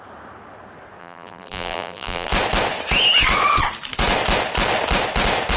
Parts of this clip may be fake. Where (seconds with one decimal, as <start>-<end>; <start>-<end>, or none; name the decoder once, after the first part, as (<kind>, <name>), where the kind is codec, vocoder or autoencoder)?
1.0-2.3 (vocoder, BigVGAN v2)